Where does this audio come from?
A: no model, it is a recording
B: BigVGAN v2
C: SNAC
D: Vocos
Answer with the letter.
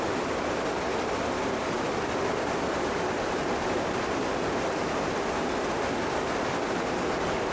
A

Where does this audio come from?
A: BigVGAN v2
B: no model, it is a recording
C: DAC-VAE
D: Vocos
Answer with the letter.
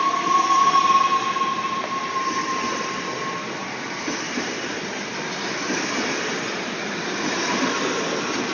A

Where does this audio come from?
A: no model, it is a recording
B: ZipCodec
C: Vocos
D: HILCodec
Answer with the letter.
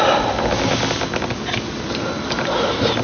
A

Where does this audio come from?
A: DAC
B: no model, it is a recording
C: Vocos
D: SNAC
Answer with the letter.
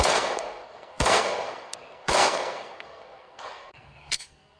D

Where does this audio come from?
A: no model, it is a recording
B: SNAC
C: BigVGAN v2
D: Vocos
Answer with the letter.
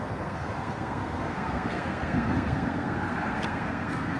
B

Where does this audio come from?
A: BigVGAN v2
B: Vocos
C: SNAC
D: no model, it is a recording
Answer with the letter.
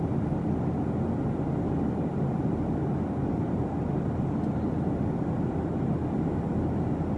D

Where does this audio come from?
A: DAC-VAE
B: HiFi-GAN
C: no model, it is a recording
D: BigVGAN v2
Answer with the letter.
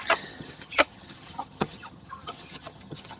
B